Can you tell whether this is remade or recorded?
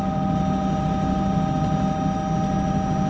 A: recorded